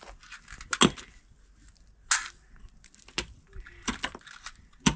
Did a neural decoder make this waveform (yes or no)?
no